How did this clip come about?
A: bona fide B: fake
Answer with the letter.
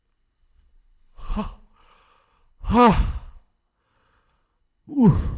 B